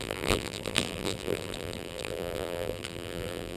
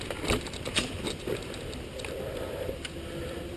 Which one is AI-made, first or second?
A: first